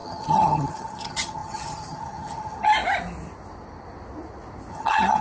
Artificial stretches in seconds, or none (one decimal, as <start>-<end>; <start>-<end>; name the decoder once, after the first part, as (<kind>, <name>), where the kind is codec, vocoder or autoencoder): 0.0-2.7 (vocoder, HiFi-GAN); 4.7-5.2